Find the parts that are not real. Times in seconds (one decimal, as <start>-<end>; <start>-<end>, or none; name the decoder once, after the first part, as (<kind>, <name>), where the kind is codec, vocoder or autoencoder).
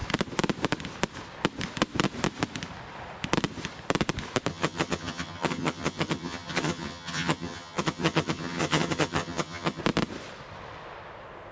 4.5-9.8 (vocoder, HiFi-GAN)